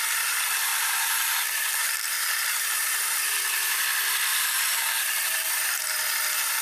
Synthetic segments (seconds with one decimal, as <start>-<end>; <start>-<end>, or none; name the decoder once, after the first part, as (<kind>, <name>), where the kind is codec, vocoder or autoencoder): 0.7-2.8 (vocoder, BigVGAN v2); 4.3-5.5